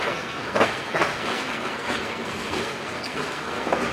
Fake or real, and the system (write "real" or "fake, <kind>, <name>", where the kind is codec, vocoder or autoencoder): fake, codec, SNAC